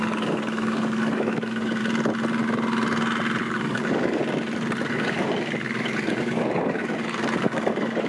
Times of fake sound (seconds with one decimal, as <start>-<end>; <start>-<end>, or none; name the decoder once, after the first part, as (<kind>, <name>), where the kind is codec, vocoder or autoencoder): 0.0-1.8 (codec, DAC); 3.4-4.2; 4.9-8.1